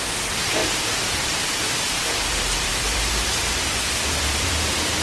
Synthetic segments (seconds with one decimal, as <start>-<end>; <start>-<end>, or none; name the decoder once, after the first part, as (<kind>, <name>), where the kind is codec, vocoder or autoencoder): 0.0-0.6 (vocoder, BigVGAN v2); 1.7-5.0